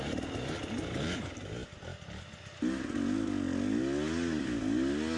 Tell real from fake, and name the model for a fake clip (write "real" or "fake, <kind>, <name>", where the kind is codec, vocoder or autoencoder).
real